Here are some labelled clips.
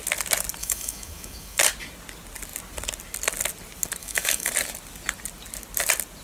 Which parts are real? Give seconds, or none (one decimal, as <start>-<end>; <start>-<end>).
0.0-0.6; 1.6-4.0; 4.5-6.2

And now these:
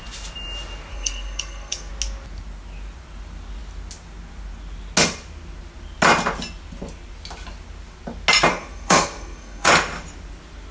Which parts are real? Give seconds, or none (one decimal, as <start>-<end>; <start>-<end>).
0.0-0.9; 1.9-8.5; 9.7-10.7

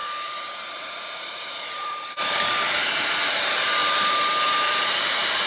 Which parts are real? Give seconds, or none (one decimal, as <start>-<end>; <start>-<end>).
none